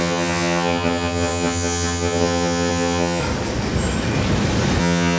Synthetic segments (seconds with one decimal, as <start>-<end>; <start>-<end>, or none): 0.0-3.2; 4.8-5.2